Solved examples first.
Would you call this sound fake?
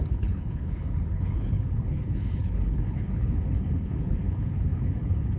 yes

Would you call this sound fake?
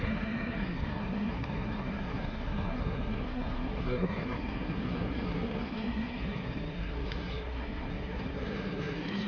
yes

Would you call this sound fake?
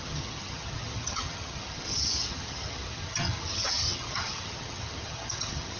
yes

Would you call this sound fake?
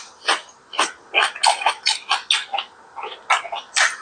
no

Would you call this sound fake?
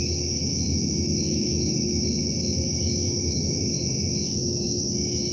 yes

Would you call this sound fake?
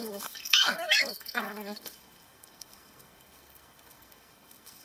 yes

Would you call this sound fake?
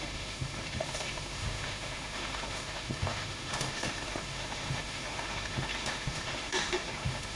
yes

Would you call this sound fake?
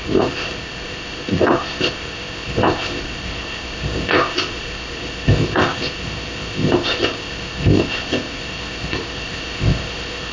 yes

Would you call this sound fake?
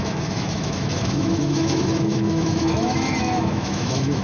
yes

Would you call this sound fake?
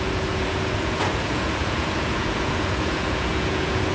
yes